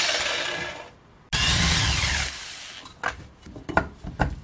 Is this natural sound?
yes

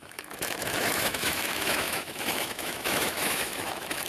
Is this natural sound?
no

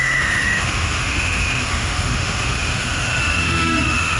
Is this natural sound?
no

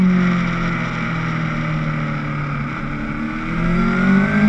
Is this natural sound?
yes